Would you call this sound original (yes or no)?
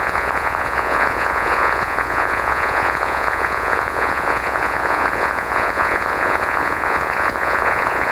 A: no